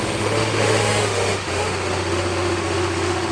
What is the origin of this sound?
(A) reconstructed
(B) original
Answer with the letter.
A